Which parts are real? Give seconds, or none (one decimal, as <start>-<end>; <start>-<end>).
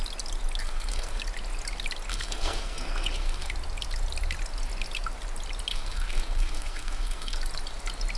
0.0-0.6; 1.2-2.1; 3.5-5.7; 7.4-8.2